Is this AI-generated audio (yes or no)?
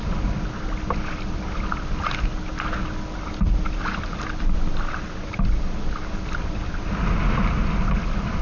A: no